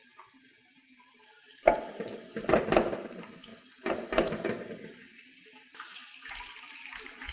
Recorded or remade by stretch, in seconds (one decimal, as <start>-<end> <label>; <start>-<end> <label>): 0.0-3.5 remade; 3.5-4.6 recorded; 4.6-7.3 remade